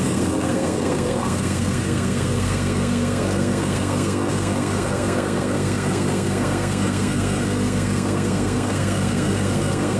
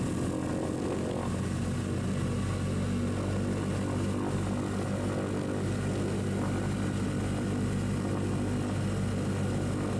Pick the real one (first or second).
second